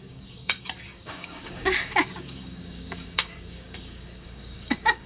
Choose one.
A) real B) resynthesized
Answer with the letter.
B